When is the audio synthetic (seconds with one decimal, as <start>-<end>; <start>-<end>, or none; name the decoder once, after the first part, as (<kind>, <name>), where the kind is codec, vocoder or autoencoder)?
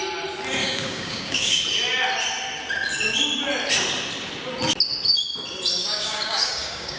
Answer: 0.6-1.6 (codec, DAC); 5.8-7.0